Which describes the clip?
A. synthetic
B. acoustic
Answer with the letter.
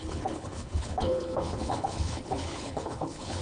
A